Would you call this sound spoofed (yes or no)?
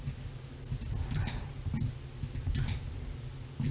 no